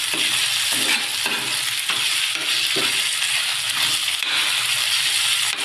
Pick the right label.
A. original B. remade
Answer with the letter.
A